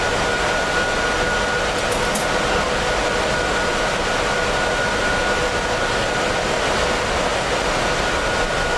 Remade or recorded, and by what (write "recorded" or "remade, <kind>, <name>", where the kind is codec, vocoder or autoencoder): recorded